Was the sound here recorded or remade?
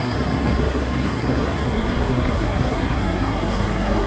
remade